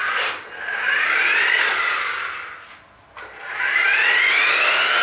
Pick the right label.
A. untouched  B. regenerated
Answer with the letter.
A